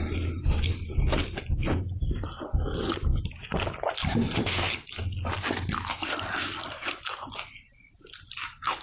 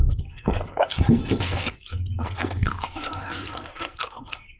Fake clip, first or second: second